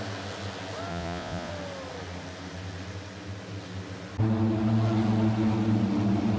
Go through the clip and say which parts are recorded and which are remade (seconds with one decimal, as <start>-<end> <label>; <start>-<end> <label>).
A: 0.0-0.9 recorded; 0.9-1.5 remade; 1.5-6.4 recorded